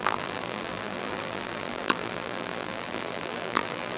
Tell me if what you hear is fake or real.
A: fake